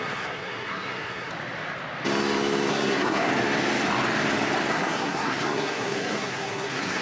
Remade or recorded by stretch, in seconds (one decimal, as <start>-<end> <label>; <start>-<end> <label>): 0.0-1.3 remade; 1.3-2.7 recorded; 2.7-3.3 remade; 3.3-4.7 recorded; 4.7-7.0 remade